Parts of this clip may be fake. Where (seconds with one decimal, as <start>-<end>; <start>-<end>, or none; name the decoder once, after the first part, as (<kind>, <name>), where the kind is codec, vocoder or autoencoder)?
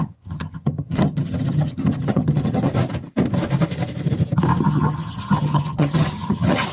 0.0-2.7 (vocoder, HiFi-GAN); 4.6-6.7